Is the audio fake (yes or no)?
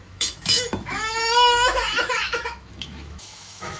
yes